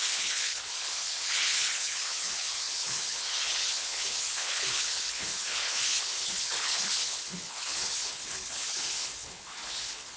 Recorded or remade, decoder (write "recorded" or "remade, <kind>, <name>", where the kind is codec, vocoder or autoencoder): remade, codec, HILCodec